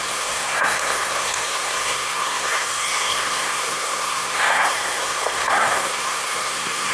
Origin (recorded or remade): remade